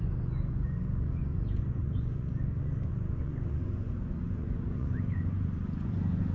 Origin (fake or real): fake